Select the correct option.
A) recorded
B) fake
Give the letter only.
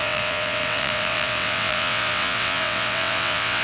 B